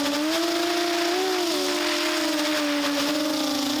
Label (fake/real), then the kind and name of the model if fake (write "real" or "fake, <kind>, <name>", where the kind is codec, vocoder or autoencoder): real